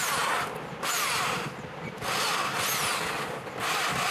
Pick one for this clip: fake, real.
real